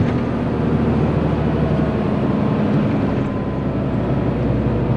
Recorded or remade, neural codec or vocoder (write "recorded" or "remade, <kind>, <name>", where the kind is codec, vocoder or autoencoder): recorded